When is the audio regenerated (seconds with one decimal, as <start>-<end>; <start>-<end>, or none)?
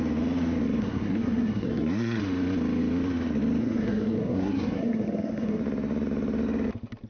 0.8-2.2; 3.6-5.6